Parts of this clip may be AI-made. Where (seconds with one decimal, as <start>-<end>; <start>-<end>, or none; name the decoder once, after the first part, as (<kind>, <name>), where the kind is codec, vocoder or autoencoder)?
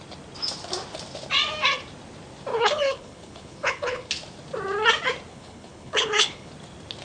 2.5-4.1 (codec, HILCodec); 5.3-6.5